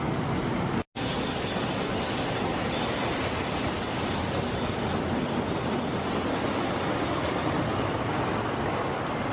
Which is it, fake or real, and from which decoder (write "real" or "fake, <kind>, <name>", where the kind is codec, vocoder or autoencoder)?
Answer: real